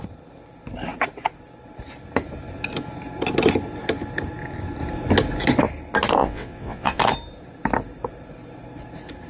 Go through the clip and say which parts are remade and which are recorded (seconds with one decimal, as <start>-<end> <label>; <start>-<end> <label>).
0.0-6.2 recorded; 6.2-7.0 remade; 7.0-9.3 recorded